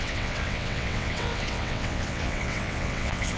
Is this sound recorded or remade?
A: remade